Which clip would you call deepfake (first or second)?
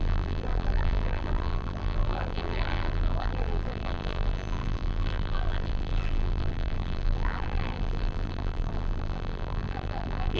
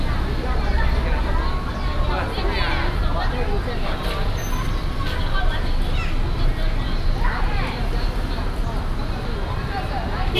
first